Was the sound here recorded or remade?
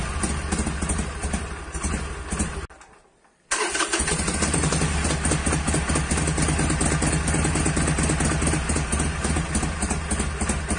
recorded